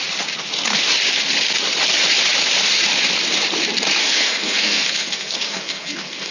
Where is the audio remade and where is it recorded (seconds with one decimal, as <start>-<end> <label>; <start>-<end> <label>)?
0.0-4.0 recorded; 4.0-6.3 remade